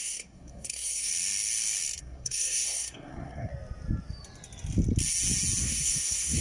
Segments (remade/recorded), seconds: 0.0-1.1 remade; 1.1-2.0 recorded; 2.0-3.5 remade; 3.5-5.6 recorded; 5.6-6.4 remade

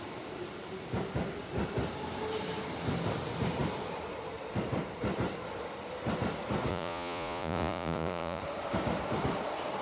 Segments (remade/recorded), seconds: 0.0-6.7 recorded; 6.7-8.4 remade; 8.4-9.8 recorded